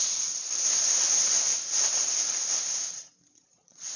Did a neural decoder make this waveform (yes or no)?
yes